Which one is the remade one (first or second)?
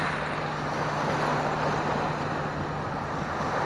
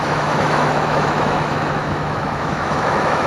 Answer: second